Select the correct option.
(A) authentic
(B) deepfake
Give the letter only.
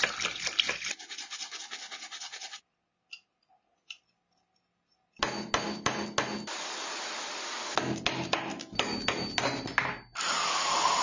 A